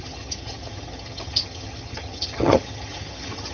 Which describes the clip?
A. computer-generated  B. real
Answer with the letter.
A